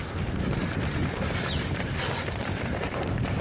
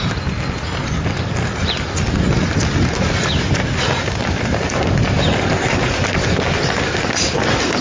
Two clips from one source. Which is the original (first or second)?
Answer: second